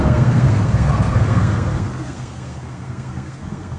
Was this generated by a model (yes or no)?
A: yes